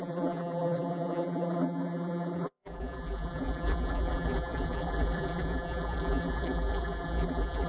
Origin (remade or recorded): remade